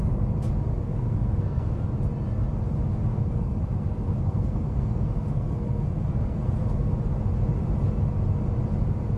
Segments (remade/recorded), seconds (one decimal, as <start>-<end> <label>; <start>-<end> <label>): 0.0-0.7 recorded; 0.7-1.8 remade; 1.8-3.1 recorded; 3.1-6.9 remade; 6.9-9.2 recorded